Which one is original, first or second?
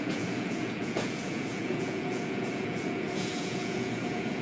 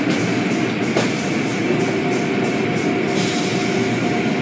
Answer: second